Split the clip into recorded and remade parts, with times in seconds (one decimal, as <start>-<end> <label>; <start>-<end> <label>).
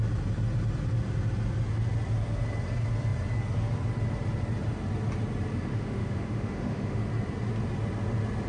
0.0-5.7 recorded; 5.7-7.0 remade; 7.0-8.5 recorded